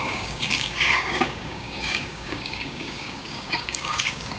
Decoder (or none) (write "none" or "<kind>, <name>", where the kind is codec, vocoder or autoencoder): codec, DAC